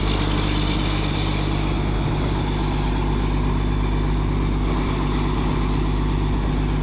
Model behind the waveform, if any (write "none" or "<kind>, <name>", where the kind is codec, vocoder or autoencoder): none